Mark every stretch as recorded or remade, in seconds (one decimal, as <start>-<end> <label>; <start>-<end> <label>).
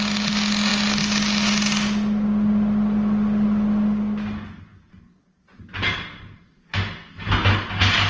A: 0.0-8.1 recorded